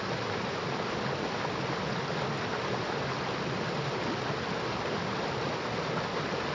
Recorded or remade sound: recorded